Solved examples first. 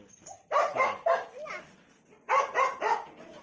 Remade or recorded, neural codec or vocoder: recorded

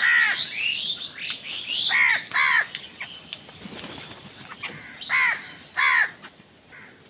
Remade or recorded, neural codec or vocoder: recorded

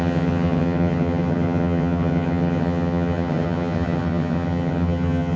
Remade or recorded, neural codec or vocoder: remade, vocoder, HiFi-GAN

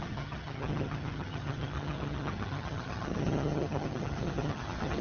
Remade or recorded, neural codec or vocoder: remade, vocoder, HiFi-GAN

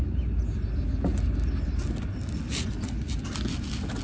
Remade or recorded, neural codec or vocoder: recorded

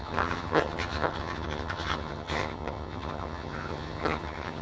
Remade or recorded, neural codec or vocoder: remade, vocoder, HiFi-GAN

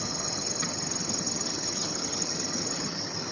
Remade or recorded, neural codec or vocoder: remade, vocoder, HiFi-GAN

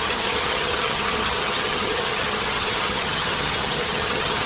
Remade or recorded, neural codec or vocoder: remade, vocoder, HiFi-GAN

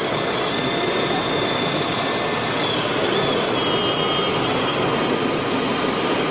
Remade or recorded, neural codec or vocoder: recorded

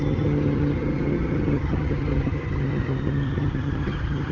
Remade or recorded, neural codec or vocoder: remade, vocoder, HiFi-GAN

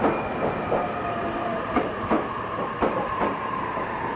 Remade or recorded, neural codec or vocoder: recorded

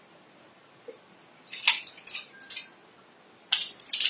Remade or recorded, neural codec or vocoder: recorded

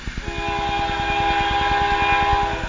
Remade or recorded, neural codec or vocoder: recorded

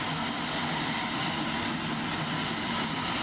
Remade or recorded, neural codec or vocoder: recorded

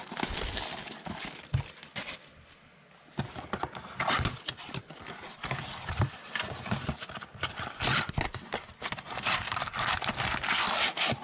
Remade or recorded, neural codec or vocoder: recorded